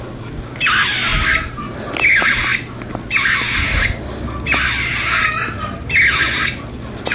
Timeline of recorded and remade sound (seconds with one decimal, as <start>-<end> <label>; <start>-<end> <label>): 0.0-7.1 recorded